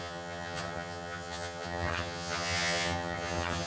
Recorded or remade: remade